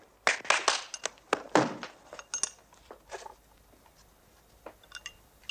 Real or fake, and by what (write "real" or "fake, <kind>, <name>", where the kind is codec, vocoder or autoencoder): real